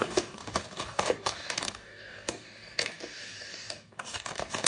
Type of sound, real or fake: fake